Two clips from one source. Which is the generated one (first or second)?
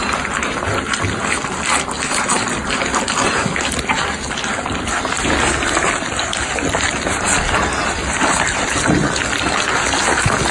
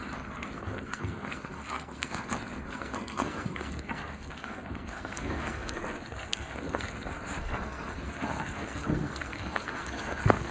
second